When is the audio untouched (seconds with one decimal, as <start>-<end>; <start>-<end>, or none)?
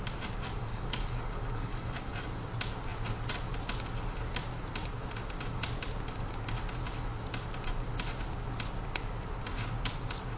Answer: 0.0-0.6; 2.1-10.4